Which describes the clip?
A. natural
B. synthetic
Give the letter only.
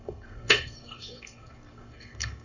B